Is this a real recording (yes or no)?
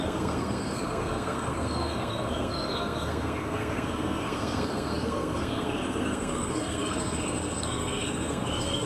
no